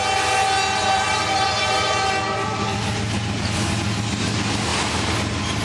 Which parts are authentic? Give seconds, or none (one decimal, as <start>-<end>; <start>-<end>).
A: 0.0-0.8; 2.1-5.6